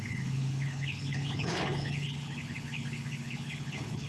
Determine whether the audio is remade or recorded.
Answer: remade